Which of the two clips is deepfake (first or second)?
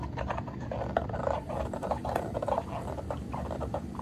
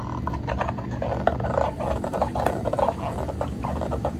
first